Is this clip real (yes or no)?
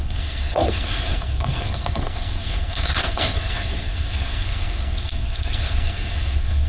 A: no